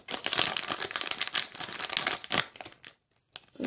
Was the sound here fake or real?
real